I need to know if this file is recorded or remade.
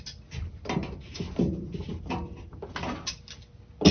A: recorded